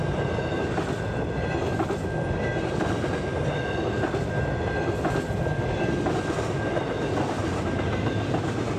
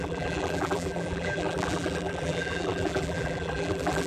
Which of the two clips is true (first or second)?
first